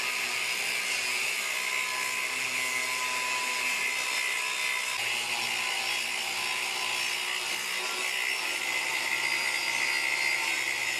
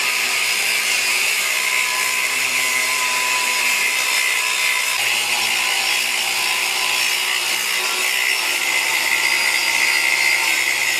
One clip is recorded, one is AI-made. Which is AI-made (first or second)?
second